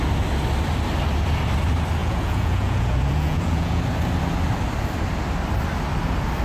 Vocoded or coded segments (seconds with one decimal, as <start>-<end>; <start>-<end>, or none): 2.0-3.8